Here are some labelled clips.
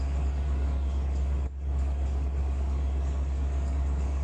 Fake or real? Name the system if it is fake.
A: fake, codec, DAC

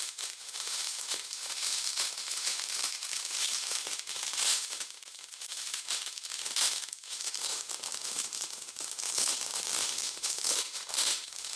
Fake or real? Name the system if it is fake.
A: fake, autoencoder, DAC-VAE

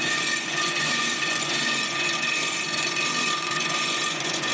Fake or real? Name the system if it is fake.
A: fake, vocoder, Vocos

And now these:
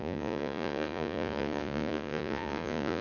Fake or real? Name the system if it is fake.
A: fake, vocoder, Vocos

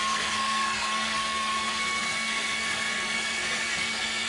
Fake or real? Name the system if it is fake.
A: fake, codec, SNAC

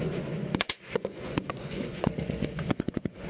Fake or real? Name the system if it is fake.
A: fake, vocoder, Vocos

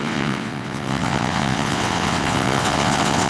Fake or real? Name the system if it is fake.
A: fake, vocoder, WaveNeXt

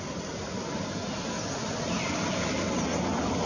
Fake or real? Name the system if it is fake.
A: real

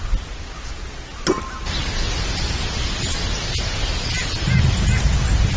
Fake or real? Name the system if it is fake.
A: real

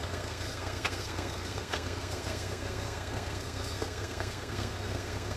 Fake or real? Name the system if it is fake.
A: fake, codec, SNAC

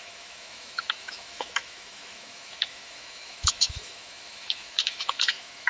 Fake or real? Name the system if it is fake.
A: fake, autoencoder, DAC-VAE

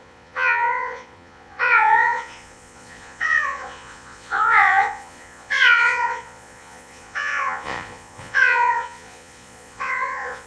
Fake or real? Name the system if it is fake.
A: fake, vocoder, Vocos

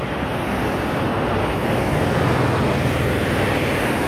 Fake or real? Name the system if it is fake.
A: real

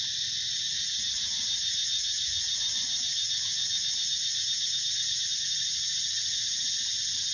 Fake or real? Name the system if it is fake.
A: real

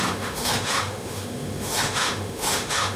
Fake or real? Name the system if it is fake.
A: fake, autoencoder, DAC-VAE